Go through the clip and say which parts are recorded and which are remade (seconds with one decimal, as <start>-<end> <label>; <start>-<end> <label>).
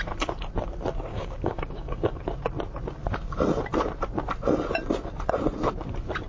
0.0-1.1 recorded; 1.1-2.1 remade; 2.1-6.3 recorded